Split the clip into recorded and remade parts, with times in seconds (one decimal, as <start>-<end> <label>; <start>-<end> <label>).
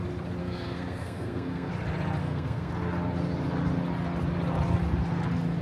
0.0-0.4 recorded; 0.4-1.7 remade; 1.7-2.2 recorded; 2.2-2.7 remade; 2.7-5.6 recorded